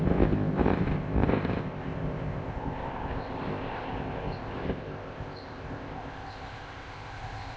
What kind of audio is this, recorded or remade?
remade